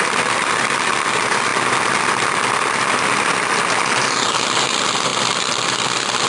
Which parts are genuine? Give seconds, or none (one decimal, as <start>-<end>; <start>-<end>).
none